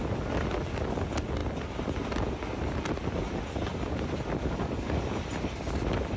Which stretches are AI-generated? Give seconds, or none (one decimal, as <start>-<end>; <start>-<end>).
4.4-5.0